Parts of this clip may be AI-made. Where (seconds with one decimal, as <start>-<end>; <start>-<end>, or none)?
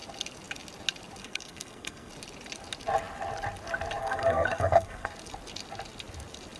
1.2-2.1; 4.0-5.1